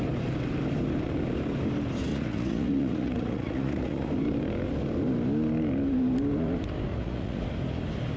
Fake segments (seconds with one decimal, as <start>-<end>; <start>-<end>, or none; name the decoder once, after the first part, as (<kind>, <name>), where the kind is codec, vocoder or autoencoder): 2.1-4.1 (vocoder, Vocos); 6.9-7.4